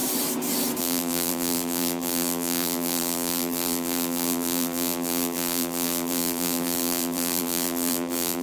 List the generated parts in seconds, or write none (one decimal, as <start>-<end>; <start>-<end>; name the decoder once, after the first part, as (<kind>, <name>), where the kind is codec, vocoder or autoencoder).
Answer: 0.8-8.4 (vocoder, BigVGAN v2)